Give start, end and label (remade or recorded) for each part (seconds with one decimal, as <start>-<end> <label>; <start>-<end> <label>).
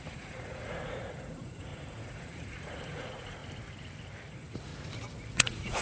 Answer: 0.0-3.4 remade; 3.4-4.3 recorded; 4.3-4.7 remade; 4.7-5.3 recorded; 5.3-5.8 remade